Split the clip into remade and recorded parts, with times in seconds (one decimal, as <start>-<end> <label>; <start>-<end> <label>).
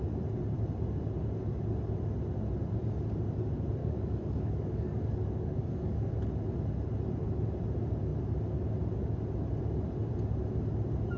0.0-3.8 recorded; 3.8-6.1 remade; 6.1-11.2 recorded